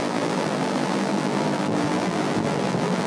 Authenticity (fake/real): fake